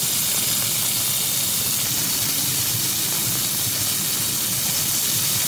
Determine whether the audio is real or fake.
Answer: real